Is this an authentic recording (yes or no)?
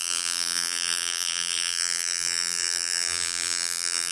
no